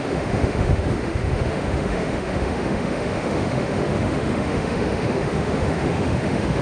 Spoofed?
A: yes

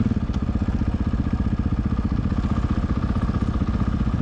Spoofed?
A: no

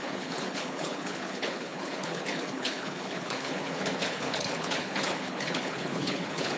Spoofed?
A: yes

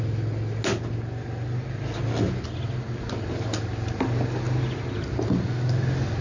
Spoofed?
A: no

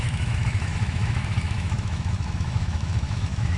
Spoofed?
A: yes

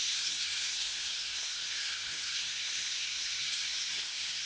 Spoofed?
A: yes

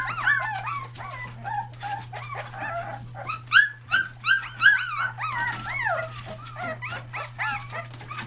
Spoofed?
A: no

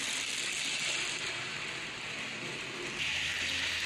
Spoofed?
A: yes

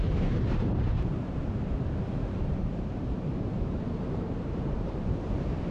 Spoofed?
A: yes